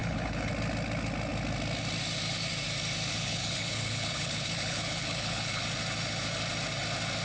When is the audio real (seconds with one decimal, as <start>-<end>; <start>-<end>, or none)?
0.5-3.1; 5.6-7.2